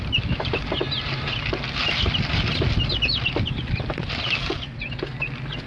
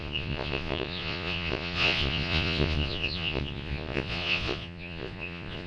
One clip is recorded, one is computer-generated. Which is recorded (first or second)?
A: first